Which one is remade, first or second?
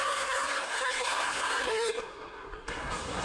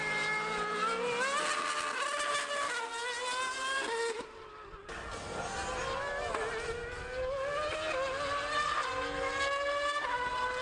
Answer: first